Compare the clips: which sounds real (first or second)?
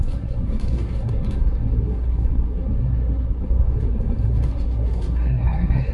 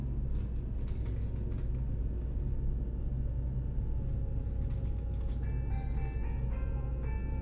second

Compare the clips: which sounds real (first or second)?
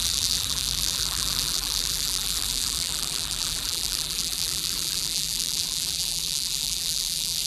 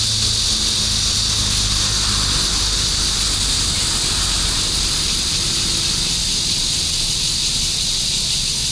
second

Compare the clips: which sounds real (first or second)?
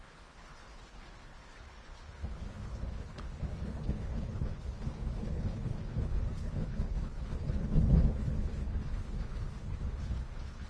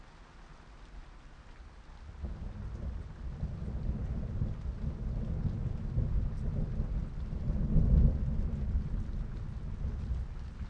second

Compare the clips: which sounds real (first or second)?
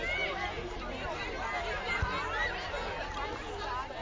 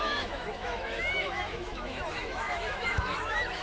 first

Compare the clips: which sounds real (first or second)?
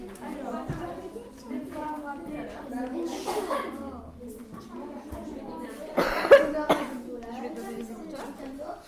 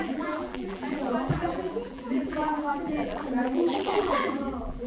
first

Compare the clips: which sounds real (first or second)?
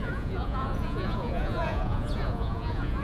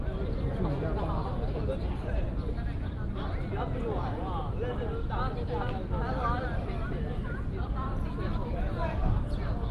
second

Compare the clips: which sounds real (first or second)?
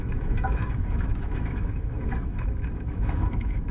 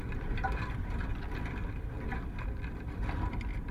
second